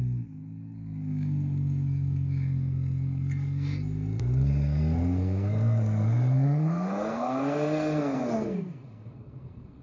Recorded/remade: remade